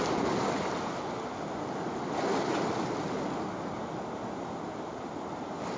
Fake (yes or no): no